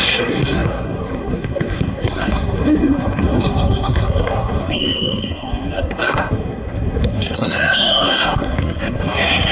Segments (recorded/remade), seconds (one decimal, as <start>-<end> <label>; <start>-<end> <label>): 0.0-9.5 remade